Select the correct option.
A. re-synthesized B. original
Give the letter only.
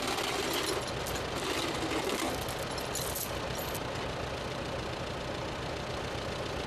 B